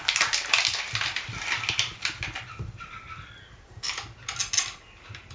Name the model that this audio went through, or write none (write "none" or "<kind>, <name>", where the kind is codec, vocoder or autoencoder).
none